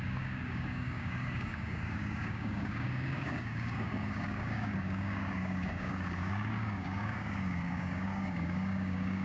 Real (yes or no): no